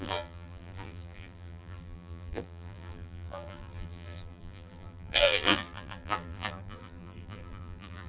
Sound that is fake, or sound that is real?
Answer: fake